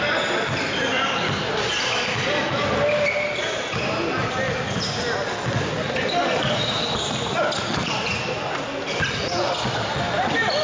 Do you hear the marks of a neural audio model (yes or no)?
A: no